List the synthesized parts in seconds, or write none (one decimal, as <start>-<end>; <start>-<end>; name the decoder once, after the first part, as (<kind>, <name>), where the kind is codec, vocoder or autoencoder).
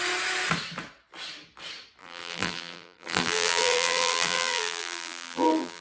2.0-5.8 (vocoder, BigVGAN v2)